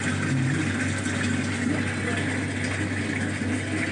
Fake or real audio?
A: real